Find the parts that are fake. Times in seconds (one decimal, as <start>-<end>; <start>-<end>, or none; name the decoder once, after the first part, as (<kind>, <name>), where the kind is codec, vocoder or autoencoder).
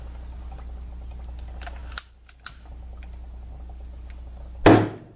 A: none